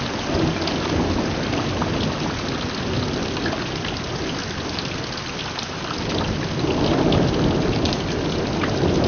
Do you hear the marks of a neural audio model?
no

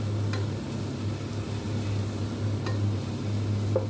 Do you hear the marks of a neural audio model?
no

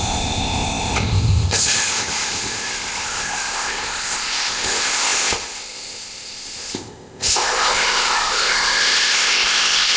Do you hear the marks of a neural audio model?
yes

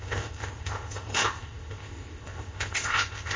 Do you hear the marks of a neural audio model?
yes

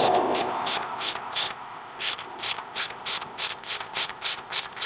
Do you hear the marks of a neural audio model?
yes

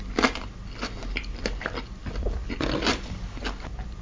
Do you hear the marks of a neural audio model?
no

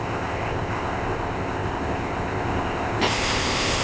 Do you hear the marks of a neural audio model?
yes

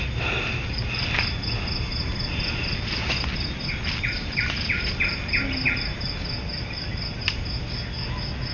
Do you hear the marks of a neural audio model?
no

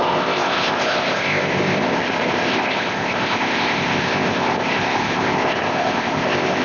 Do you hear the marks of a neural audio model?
yes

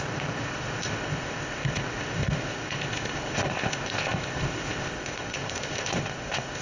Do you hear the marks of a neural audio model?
yes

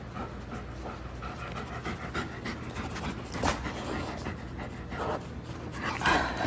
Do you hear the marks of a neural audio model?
no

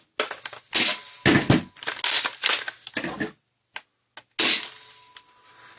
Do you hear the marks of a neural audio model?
no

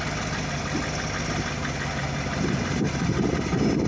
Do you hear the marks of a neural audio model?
no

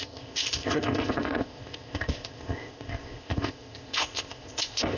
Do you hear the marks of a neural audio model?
yes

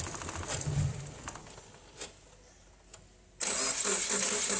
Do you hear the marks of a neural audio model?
no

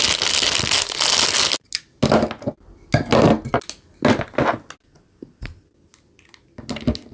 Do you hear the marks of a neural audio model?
no